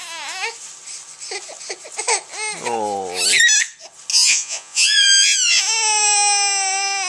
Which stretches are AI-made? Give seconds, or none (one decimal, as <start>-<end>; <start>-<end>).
4.1-5.6